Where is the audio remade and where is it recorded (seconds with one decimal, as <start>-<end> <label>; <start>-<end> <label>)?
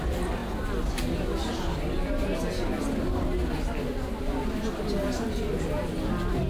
0.0-6.5 recorded